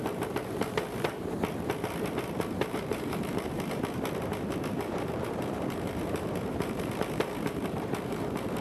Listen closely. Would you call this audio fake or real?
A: fake